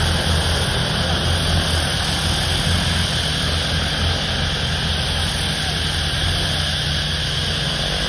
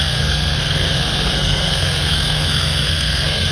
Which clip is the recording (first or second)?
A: first